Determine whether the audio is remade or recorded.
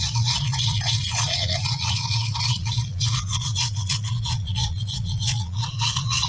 remade